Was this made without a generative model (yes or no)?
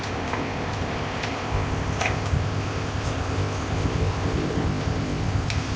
no